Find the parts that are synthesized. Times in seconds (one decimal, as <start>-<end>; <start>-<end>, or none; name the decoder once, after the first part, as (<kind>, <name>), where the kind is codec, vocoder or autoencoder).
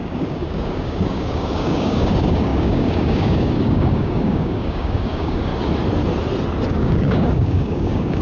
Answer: 0.0-5.5 (codec, DAC); 6.7-8.2